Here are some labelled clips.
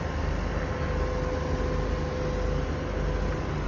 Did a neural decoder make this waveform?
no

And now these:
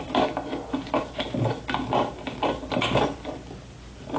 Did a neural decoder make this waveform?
no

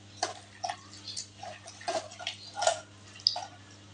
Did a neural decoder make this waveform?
no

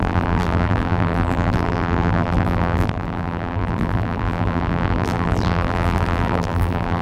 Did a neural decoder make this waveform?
yes